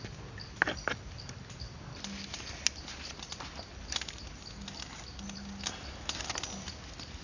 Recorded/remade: recorded